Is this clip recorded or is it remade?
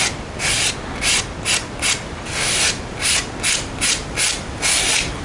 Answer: recorded